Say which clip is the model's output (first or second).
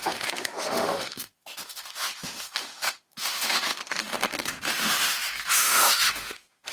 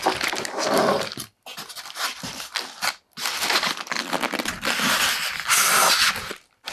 first